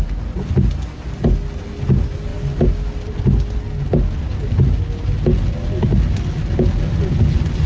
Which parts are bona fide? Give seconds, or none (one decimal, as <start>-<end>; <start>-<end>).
0.0-7.7